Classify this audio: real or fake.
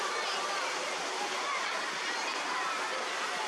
real